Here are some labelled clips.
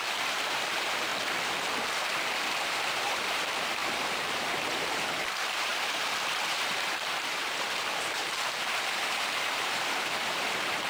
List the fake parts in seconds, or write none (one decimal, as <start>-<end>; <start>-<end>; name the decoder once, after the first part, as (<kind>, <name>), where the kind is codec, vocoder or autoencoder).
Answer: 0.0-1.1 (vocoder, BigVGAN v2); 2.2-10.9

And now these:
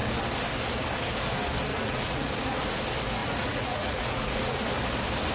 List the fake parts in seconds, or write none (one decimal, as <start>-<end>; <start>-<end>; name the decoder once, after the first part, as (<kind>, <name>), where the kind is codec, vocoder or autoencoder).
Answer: 1.7-2.3 (vocoder, Vocos); 3.2-4.6

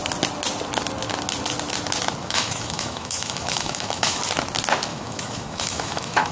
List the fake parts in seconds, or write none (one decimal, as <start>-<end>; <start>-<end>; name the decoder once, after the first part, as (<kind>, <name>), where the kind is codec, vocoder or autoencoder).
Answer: 2.2-4.2 (autoencoder, DAC-VAE); 4.9-6.3

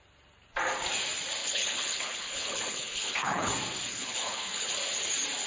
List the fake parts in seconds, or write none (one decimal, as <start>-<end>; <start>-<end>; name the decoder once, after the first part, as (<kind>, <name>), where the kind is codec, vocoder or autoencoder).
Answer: 1.4-3.5 (codec, HILCodec); 3.9-4.7

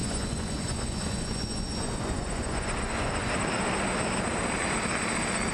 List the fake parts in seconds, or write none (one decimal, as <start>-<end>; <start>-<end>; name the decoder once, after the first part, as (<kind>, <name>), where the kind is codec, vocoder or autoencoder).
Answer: 0.0-3.3 (vocoder, Vocos)